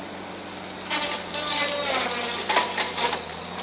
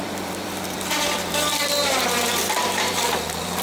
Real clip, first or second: first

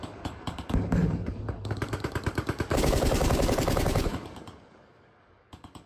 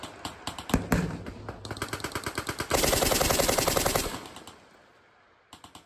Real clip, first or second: second